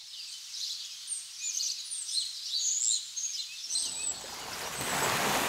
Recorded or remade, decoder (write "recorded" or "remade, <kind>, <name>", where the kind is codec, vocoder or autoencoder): recorded